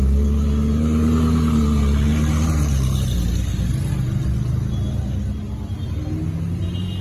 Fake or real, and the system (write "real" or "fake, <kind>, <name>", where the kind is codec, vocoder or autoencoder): real